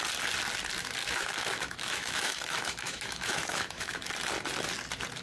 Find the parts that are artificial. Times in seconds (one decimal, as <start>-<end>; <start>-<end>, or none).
1.0-4.1